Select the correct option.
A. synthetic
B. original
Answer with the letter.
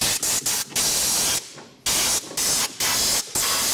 B